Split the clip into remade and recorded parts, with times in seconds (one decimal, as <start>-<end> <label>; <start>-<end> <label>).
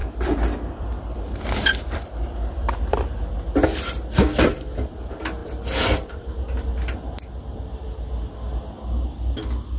0.0-2.8 remade; 2.8-9.8 recorded